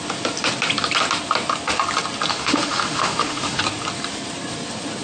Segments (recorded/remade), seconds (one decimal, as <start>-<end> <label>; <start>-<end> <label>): 0.0-2.3 recorded; 2.3-3.6 remade; 3.6-5.0 recorded

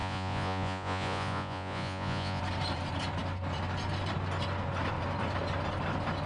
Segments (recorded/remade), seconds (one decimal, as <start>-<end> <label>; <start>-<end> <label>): 0.0-2.4 remade; 2.4-6.3 recorded

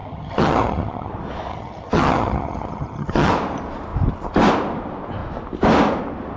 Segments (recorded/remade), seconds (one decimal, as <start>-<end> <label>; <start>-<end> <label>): 0.0-1.1 remade; 1.1-1.5 recorded; 1.5-3.3 remade; 3.3-6.4 recorded

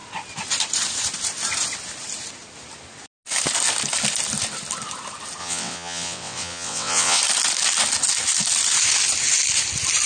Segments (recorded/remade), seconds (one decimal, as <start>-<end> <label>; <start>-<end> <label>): 0.0-5.4 recorded; 5.4-7.2 remade; 7.2-10.1 recorded

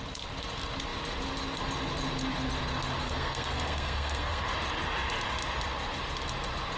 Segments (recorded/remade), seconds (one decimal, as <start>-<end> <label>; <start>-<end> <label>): 0.0-3.0 recorded; 3.0-4.4 remade; 4.4-6.8 recorded

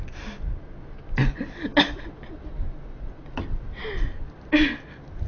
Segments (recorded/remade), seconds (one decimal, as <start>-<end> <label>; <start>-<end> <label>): 0.0-5.3 recorded

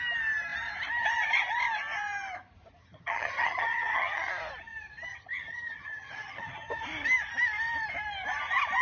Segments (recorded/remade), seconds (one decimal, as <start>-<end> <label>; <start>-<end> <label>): 0.0-2.8 recorded; 2.8-4.3 remade; 4.3-5.1 recorded; 5.1-6.7 remade; 6.7-8.8 recorded

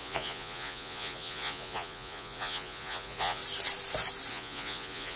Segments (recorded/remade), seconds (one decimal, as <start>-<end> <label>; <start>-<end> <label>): 0.0-3.4 remade; 3.4-4.3 recorded; 4.3-5.2 remade